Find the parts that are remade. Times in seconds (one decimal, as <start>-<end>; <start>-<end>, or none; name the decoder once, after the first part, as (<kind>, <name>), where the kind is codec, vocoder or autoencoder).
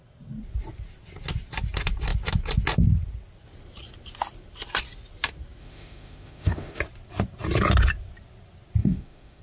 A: 5.6-6.8 (autoencoder, DAC-VAE); 8.8-9.4